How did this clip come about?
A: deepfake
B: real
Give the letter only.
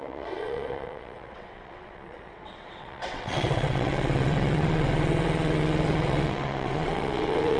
A